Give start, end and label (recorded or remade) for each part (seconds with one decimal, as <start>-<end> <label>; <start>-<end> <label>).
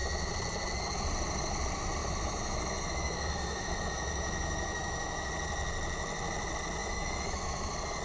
0.0-2.0 recorded; 2.0-5.3 remade; 5.3-6.8 recorded; 6.8-7.4 remade; 7.4-8.0 recorded